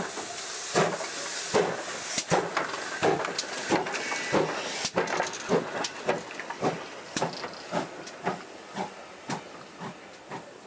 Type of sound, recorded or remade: recorded